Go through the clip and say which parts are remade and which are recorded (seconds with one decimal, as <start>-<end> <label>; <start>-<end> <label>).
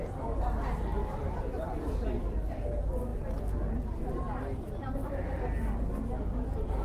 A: 0.0-6.8 recorded